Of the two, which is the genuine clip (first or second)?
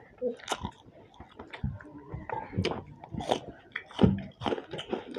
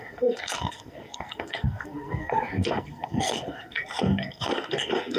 first